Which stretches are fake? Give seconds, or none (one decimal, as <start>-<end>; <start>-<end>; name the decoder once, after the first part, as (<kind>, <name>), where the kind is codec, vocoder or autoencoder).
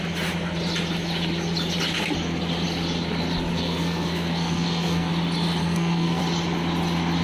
3.5-5.1 (codec, SNAC); 5.6-6.2